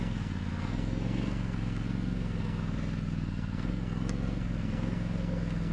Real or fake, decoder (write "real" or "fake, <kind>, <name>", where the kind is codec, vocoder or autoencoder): fake, codec, SNAC